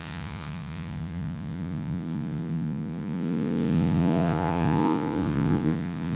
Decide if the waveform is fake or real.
fake